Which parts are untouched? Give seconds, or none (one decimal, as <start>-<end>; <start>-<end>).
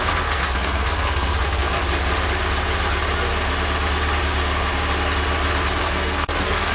1.8-5.8